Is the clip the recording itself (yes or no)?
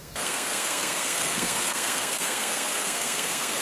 no